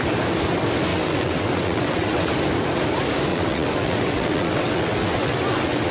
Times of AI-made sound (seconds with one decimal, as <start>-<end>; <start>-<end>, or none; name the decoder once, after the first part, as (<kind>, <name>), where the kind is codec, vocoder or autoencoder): 0.9-2.3 (vocoder, WaveNeXt); 3.3-5.9